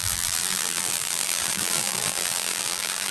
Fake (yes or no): yes